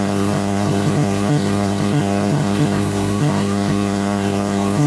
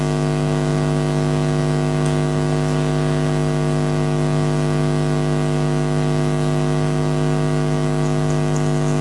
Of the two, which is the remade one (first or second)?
first